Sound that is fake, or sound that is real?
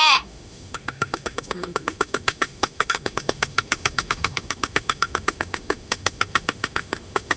fake